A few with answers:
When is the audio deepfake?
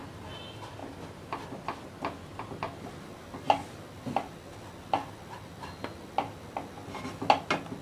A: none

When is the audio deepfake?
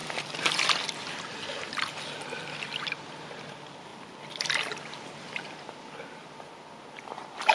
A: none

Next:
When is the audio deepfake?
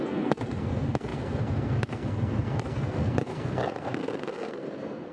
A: 0.0-5.1 (codec, SNAC)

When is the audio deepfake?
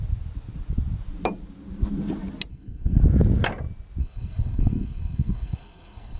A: 2.5-3.0 (codec, SNAC); 4.0-6.2